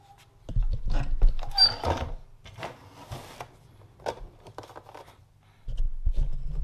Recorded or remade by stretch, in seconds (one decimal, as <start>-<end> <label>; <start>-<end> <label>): 0.0-6.6 recorded